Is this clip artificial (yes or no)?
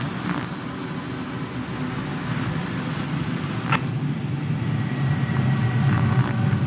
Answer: no